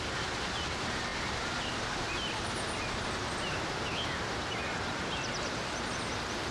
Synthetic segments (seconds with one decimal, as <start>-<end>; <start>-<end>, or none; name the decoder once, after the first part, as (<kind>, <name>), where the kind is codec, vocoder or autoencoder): none